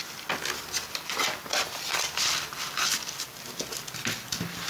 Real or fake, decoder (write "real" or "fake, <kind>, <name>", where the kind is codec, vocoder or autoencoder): real